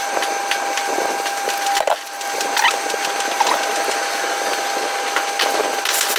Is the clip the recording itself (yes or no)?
yes